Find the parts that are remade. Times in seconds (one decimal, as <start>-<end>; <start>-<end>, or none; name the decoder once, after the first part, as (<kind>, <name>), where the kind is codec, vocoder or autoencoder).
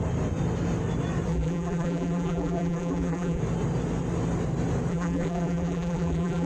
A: 1.3-3.4 (vocoder, BigVGAN v2); 4.9-6.5